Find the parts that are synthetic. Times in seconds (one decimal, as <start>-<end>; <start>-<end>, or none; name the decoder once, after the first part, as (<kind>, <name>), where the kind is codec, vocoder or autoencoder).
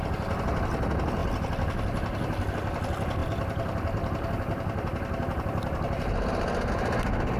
none